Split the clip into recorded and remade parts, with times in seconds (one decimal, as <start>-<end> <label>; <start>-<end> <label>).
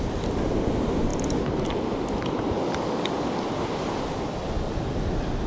0.0-5.5 recorded